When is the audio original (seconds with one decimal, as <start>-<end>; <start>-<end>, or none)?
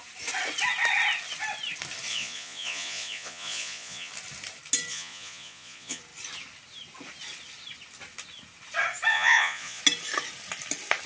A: 0.0-2.1; 4.1-4.9; 6.0-9.1; 9.8-11.1